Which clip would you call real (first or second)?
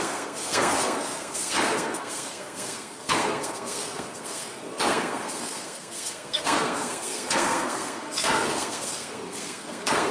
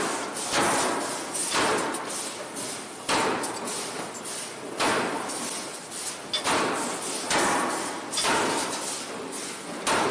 second